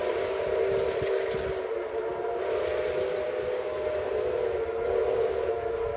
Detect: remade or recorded recorded